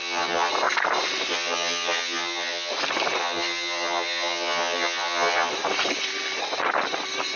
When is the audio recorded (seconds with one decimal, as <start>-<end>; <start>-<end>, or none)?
0.5-1.3; 2.7-3.2; 5.5-7.4